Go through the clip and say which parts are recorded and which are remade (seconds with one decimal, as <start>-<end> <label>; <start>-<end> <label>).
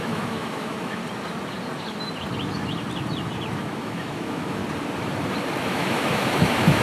0.0-1.0 remade; 1.0-3.5 recorded; 3.5-4.6 remade; 4.6-5.6 recorded; 5.6-6.8 remade